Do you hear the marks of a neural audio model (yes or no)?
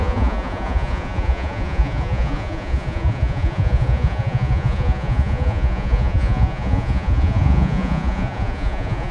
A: yes